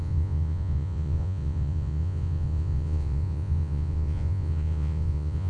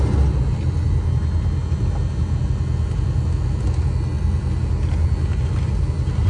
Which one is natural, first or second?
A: second